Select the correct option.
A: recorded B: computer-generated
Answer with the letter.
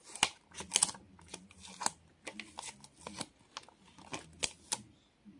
A